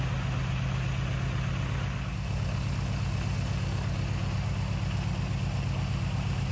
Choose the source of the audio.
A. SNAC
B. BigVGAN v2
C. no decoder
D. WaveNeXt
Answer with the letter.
C